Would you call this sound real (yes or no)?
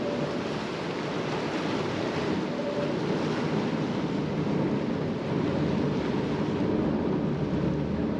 yes